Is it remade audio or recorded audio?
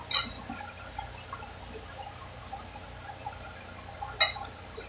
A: recorded